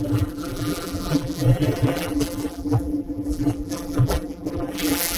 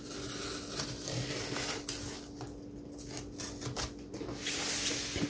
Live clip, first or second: second